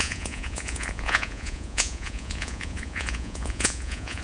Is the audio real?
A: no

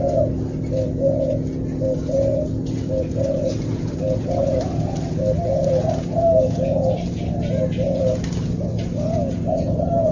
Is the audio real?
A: yes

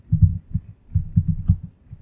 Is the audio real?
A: yes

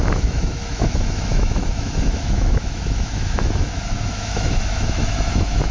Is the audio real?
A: no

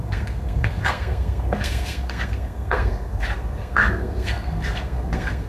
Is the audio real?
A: no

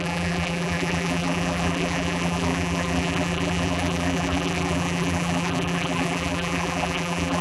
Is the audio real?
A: no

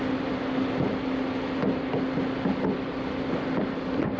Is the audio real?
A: yes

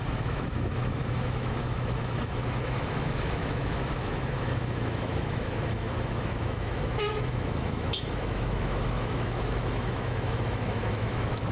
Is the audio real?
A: no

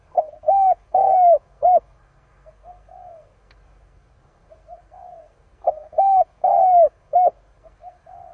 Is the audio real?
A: no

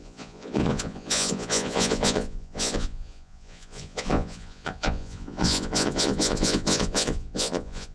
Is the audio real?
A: no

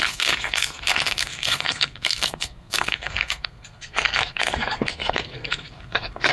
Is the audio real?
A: no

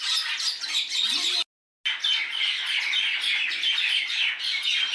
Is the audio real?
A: yes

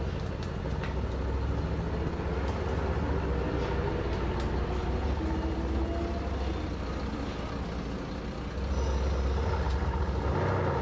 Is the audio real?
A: yes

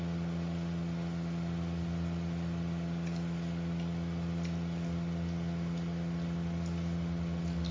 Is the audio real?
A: yes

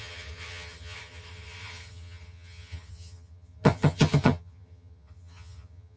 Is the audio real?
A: no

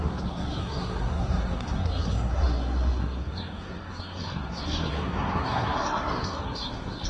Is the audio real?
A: no